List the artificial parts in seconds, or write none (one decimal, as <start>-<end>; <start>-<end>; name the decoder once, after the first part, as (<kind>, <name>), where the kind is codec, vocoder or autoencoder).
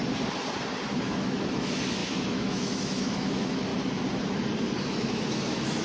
0.9-3.7 (autoencoder, DAC-VAE); 5.0-5.8